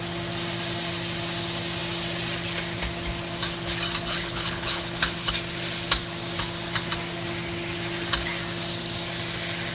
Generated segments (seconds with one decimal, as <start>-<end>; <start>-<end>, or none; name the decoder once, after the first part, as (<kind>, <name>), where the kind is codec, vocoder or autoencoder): 4.1-5.3 (codec, HILCodec)